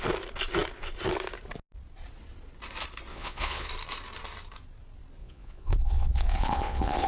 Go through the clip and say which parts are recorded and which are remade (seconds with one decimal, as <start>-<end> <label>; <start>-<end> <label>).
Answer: 0.0-3.1 recorded; 3.1-3.7 remade; 3.7-5.2 recorded; 5.2-7.1 remade

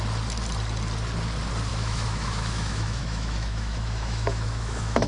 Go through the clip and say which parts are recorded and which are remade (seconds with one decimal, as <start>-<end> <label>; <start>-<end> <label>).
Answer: 0.0-1.7 recorded; 1.7-5.1 remade